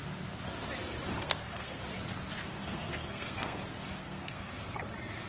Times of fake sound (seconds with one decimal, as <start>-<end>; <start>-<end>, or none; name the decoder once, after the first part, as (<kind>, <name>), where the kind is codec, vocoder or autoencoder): 1.2-1.8 (codec, SNAC); 2.4-3.6; 4.0-4.5